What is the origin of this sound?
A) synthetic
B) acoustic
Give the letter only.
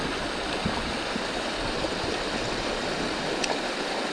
B